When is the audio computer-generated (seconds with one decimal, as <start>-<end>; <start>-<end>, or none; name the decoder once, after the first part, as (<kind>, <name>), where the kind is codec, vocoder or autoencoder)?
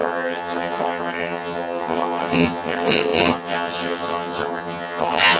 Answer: 0.0-5.4 (vocoder, HiFi-GAN)